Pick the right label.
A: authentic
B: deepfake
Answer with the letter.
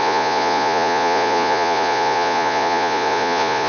B